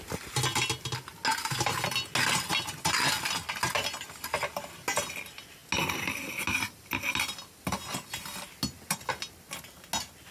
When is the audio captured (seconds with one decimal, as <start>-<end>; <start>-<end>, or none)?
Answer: 0.0-10.3